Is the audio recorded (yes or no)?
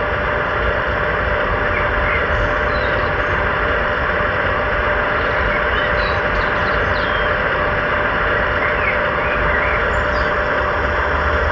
yes